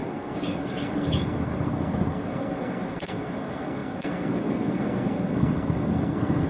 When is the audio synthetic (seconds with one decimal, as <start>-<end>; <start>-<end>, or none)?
0.0-6.5